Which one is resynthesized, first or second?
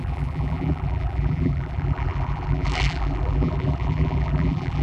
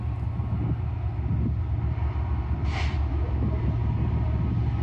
first